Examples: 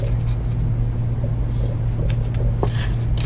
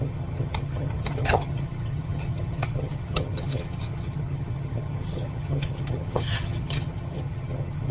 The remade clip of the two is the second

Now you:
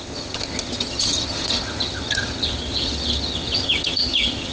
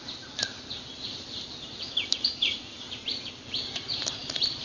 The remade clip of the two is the first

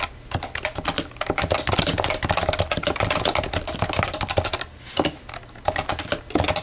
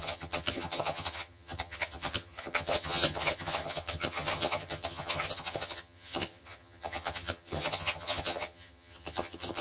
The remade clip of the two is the second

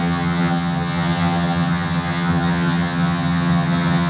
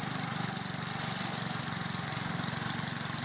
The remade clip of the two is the first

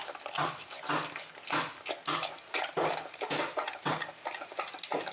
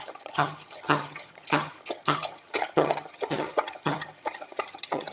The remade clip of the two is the second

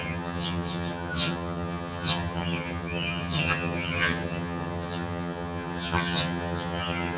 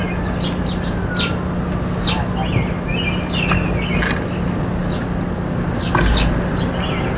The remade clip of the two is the first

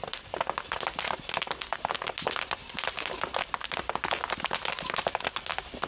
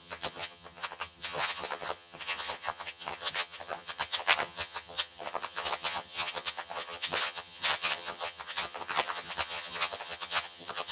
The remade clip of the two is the second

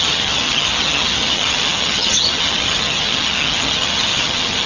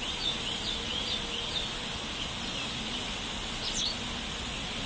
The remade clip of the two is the first